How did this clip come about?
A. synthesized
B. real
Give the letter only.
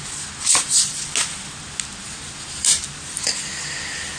B